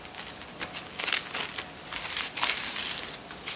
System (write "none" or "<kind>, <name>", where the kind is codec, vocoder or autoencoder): none